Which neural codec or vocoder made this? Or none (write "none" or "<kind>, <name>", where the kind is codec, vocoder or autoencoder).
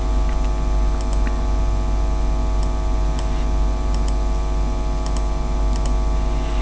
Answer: none